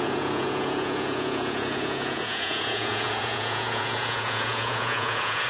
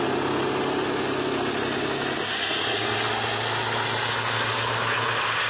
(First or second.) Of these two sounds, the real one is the second